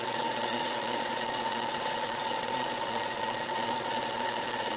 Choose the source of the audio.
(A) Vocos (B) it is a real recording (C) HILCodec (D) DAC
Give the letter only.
A